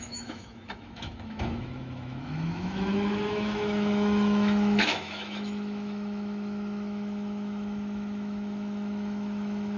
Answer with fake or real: fake